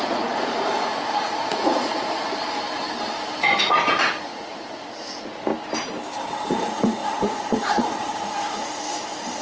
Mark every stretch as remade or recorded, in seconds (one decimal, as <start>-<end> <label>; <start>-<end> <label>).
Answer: 0.0-2.3 remade; 2.3-3.6 recorded; 3.6-5.5 remade; 5.5-6.5 recorded; 6.5-9.4 remade

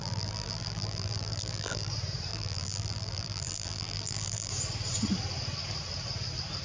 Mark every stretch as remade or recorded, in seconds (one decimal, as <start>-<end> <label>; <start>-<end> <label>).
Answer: 0.0-1.9 remade; 1.9-2.3 recorded; 2.3-4.5 remade; 4.5-6.6 recorded